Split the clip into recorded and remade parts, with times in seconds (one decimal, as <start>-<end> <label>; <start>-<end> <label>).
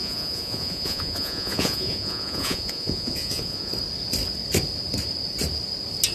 0.0-3.7 remade; 3.7-6.1 recorded